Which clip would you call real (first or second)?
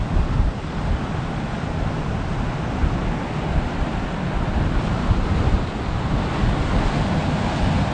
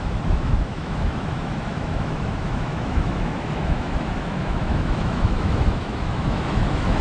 first